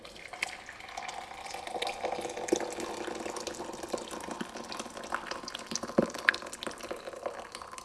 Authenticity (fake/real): real